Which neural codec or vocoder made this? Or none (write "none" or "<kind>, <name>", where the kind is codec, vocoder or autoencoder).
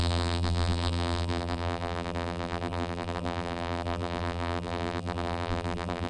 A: vocoder, BigVGAN v2